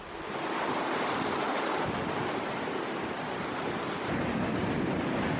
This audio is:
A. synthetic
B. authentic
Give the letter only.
B